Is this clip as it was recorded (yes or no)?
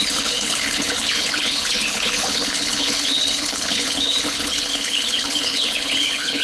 no